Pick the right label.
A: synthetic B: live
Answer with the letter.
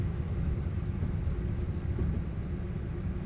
B